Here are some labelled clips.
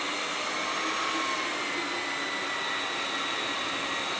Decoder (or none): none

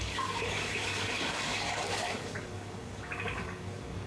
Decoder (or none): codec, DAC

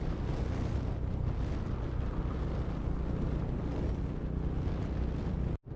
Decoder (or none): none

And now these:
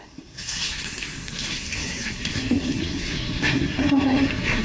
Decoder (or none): codec, SNAC